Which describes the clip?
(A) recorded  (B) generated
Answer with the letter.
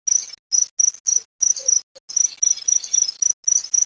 A